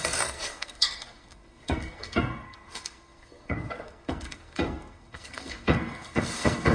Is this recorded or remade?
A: remade